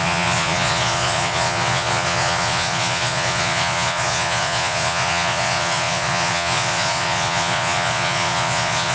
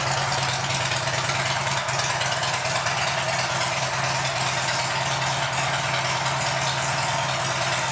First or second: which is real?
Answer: second